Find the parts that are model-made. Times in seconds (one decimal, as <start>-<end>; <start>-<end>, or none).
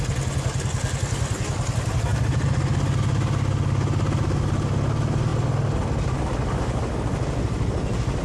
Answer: none